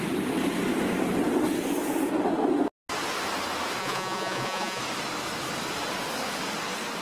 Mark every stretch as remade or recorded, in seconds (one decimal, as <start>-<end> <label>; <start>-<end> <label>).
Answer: 0.0-3.8 recorded; 3.8-4.8 remade; 4.8-7.0 recorded